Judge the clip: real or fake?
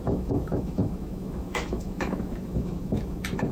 fake